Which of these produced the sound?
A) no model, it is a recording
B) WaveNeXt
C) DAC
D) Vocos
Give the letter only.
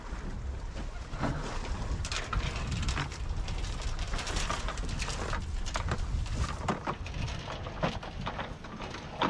A